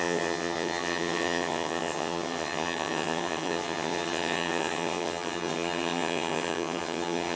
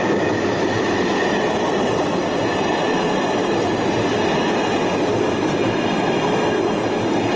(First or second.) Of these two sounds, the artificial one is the first